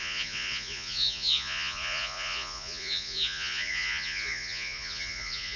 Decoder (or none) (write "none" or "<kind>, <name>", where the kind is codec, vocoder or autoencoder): vocoder, Vocos